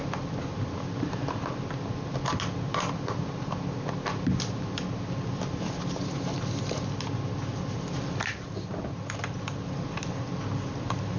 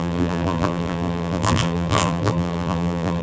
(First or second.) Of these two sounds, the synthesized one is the second